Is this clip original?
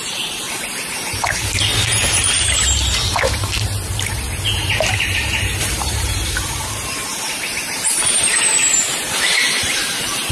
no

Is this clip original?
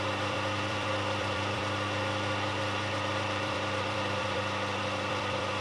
no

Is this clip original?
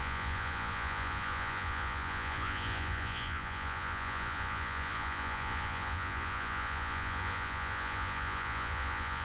no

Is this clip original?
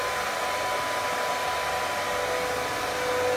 yes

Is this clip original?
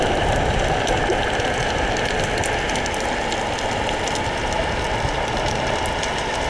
yes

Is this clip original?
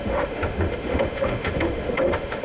no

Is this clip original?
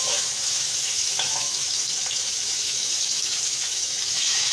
no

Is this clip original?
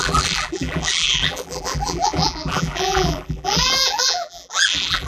no